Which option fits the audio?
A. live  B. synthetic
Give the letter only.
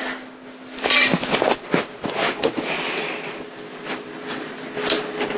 A